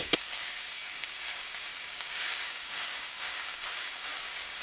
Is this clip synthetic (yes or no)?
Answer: yes